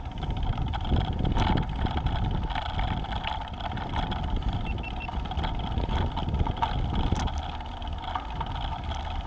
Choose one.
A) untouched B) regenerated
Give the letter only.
A